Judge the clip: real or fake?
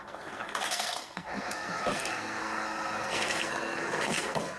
fake